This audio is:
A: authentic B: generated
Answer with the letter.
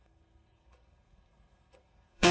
B